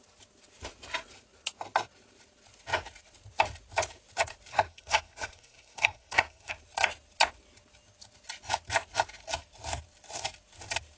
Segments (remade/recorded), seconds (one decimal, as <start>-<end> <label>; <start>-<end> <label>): 0.0-4.5 recorded; 4.5-6.5 remade; 6.5-11.0 recorded